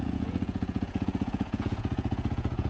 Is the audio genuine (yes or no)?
no